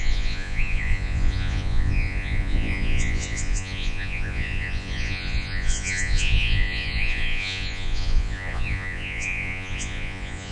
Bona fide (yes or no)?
no